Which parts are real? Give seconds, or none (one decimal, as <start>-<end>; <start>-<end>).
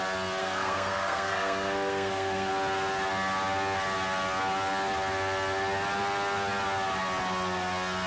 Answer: 0.0-0.4; 2.5-8.1